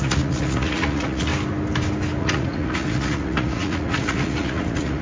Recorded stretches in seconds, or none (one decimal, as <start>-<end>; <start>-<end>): 1.3-2.2